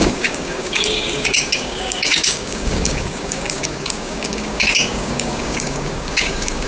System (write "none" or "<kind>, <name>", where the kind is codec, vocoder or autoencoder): codec, DAC